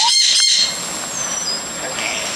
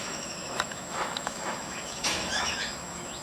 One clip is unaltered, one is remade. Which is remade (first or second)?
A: second